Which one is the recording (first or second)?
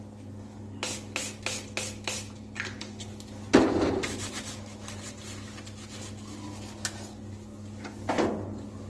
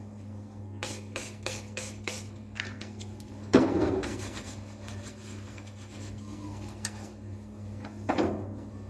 first